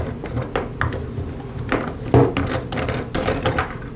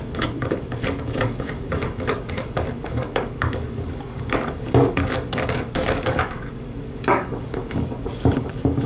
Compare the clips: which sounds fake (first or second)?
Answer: second